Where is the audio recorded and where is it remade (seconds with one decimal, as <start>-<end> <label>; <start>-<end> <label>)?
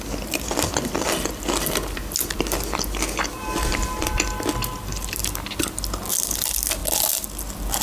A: 0.0-7.8 recorded